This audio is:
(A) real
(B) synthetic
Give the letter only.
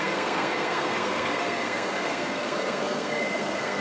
B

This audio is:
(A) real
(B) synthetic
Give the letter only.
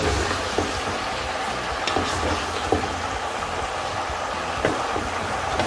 A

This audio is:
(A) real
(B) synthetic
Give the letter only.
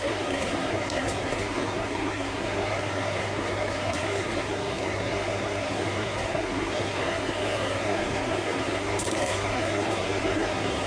B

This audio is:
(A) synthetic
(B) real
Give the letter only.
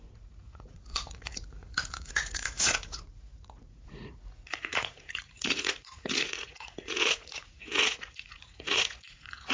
A